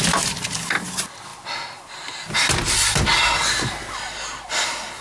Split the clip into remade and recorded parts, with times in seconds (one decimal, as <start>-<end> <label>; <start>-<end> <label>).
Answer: 0.0-5.0 recorded

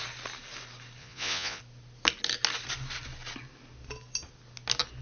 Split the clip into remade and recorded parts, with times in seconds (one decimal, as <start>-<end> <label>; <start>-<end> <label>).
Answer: 0.0-1.0 recorded; 1.0-1.6 remade; 1.6-5.0 recorded

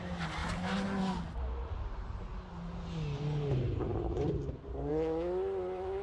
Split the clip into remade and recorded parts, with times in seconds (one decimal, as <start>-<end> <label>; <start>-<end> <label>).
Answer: 0.0-6.0 recorded

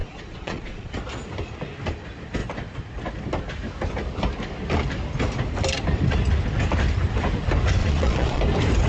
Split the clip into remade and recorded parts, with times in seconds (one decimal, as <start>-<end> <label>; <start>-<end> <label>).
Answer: 0.0-0.9 remade; 0.9-7.8 recorded; 7.8-8.4 remade; 8.4-8.9 recorded

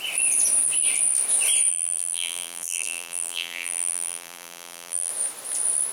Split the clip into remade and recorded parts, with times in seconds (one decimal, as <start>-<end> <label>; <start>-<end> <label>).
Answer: 0.0-1.7 recorded; 1.7-5.1 remade; 5.1-5.9 recorded

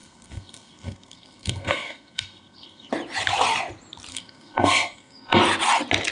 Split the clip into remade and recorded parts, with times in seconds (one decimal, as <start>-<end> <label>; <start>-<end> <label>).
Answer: 0.0-2.9 remade; 2.9-4.1 recorded; 4.1-5.4 remade; 5.4-6.1 recorded